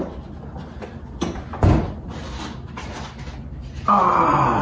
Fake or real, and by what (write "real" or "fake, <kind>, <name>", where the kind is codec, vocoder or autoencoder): real